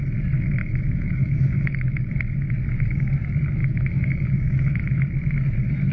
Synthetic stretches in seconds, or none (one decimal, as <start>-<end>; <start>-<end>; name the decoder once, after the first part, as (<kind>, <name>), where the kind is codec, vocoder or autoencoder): 0.6-2.1 (autoencoder, DAC-VAE); 3.6-4.8